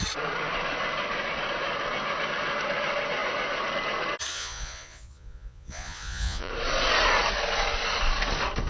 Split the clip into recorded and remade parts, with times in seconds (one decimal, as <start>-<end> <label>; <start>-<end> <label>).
0.0-4.3 recorded; 4.3-6.5 remade; 6.5-8.7 recorded